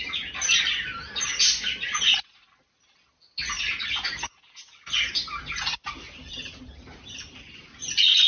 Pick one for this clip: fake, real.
real